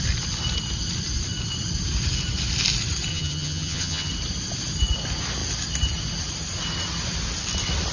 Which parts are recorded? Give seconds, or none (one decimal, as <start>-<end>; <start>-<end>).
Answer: 0.0-3.1; 4.1-7.9